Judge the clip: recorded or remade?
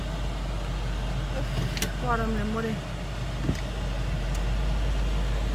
recorded